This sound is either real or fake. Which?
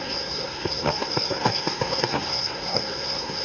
fake